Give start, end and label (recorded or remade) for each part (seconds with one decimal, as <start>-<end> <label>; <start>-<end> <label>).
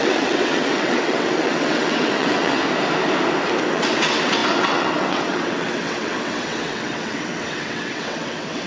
0.0-2.6 remade; 2.6-3.7 recorded; 3.7-8.7 remade